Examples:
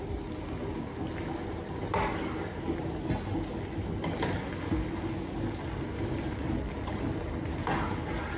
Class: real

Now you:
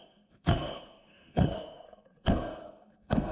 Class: fake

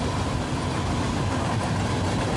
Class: real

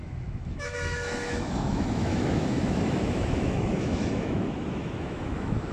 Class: fake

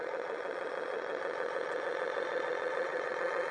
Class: fake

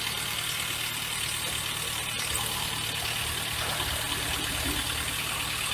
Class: real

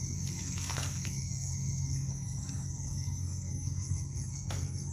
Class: fake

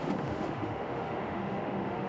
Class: fake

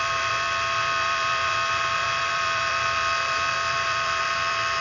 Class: fake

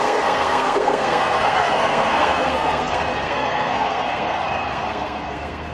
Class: fake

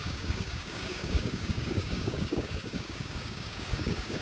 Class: fake